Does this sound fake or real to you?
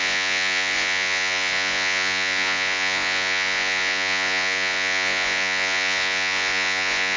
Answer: fake